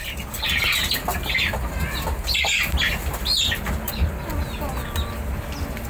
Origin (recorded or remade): recorded